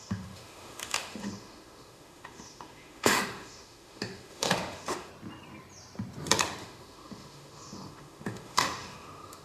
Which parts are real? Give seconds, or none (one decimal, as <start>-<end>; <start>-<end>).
5.1-6.6